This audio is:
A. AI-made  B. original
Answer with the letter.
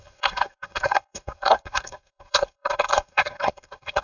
A